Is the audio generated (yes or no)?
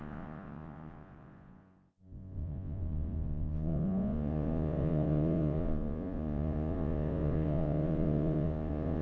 yes